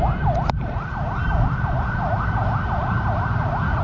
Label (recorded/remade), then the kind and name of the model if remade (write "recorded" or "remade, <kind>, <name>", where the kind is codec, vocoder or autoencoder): recorded